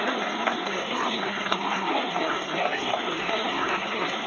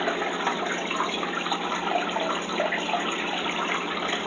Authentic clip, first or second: second